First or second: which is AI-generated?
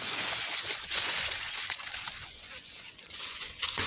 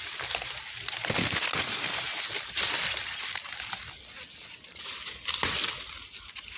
first